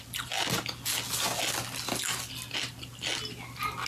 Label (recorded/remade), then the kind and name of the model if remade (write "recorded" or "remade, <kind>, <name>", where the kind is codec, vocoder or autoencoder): recorded